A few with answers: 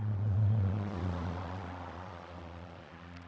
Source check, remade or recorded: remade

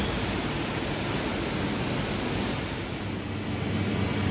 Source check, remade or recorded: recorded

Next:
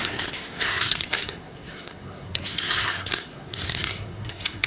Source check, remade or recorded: remade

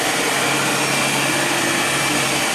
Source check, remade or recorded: recorded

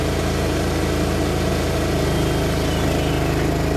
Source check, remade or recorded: recorded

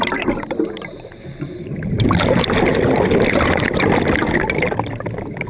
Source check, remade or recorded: recorded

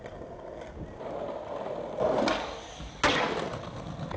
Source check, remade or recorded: recorded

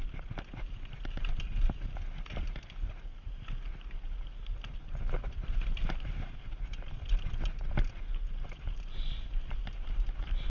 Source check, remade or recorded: recorded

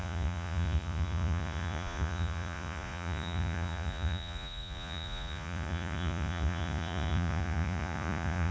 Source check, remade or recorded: remade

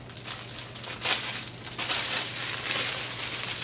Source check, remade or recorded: recorded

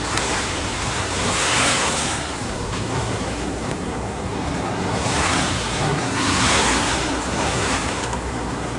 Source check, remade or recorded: remade